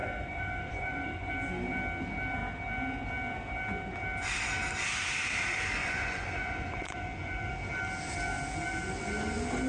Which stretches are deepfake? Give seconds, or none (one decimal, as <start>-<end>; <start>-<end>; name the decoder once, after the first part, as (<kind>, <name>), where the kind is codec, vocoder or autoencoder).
0.0-1.3 (vocoder, Vocos); 5.8-7.5